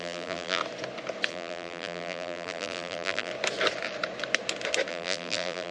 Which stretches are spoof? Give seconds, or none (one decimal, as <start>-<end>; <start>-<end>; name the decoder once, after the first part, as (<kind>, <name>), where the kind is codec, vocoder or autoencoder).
0.0-0.6 (vocoder, BigVGAN v2); 1.3-3.3; 4.9-5.7